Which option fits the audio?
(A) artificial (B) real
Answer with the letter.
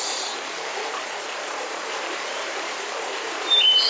A